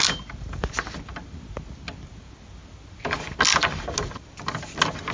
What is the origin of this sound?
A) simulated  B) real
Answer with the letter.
B